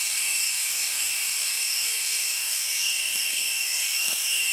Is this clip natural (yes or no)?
no